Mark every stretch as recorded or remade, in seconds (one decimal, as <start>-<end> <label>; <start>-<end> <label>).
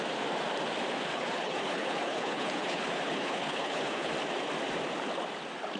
0.0-1.1 recorded; 1.1-4.1 remade; 4.1-5.8 recorded